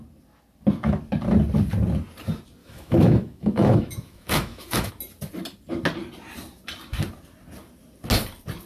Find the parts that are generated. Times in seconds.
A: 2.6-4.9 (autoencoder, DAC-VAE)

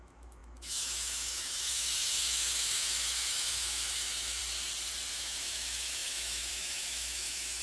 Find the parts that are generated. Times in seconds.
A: 0.0-4.4 (autoencoder, DAC-VAE); 5.1-7.6

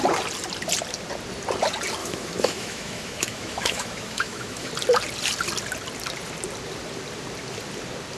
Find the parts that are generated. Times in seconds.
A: 2.0-4.7 (autoencoder, DAC-VAE)

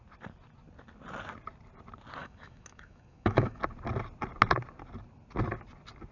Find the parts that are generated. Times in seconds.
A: 2.2-3.6 (autoencoder, DAC-VAE)

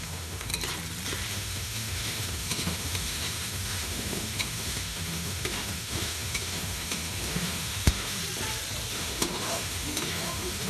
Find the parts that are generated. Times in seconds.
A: 0.0-0.5 (autoencoder, DAC-VAE); 1.3-8.2; 8.9-10.7